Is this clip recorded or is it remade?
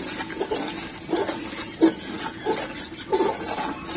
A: recorded